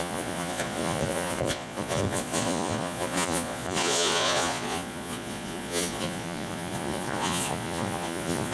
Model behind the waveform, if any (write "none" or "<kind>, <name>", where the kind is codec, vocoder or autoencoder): vocoder, Vocos